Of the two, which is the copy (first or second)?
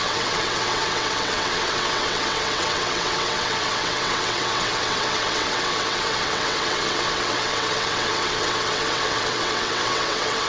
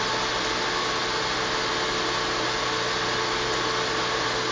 first